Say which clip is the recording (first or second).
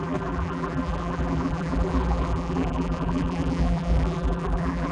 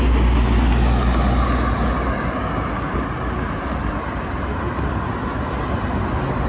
second